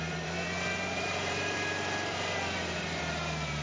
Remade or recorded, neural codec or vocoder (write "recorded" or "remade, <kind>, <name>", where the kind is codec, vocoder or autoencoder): remade, vocoder, BigVGAN v2